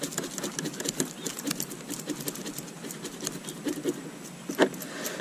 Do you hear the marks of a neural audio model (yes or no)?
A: no